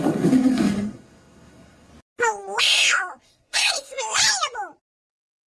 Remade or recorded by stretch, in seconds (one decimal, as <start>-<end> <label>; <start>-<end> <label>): 0.0-1.9 remade; 1.9-2.6 recorded; 2.6-4.2 remade; 4.2-5.5 recorded